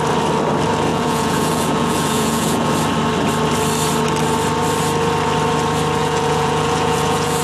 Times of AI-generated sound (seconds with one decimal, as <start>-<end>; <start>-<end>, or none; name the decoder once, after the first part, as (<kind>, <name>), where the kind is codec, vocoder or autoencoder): 0.9-2.7 (vocoder, Vocos); 6.0-7.4